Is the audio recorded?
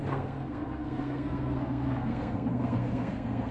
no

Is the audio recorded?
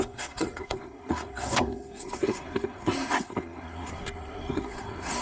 no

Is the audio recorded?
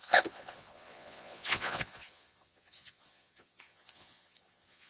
no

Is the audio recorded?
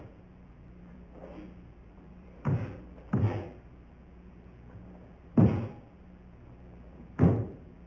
no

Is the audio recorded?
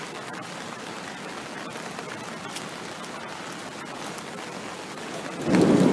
yes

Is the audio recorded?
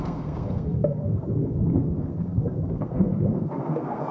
no